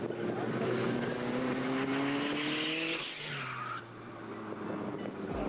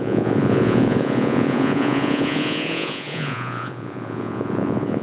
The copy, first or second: second